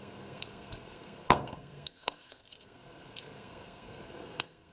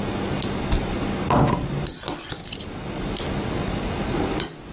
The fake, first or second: first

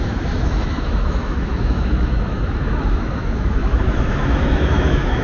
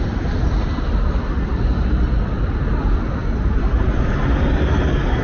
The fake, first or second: first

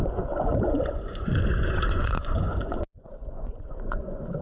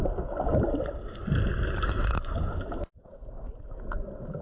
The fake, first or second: first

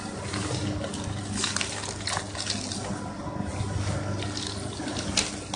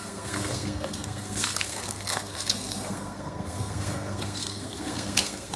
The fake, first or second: second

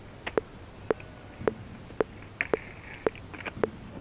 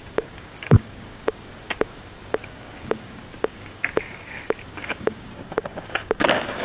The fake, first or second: second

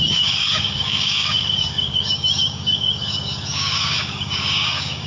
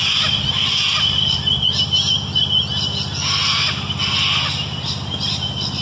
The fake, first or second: first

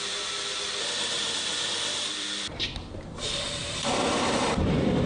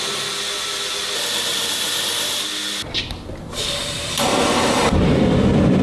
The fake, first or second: first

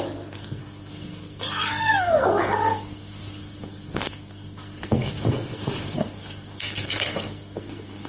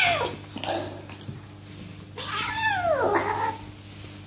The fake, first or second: first